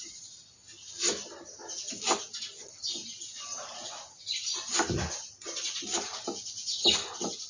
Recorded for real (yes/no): yes